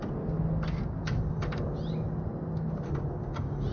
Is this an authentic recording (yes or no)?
yes